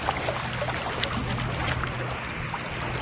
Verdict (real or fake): real